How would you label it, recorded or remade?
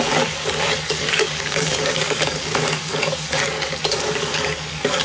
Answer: remade